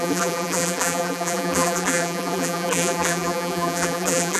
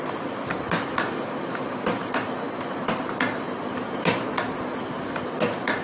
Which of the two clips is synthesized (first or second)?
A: first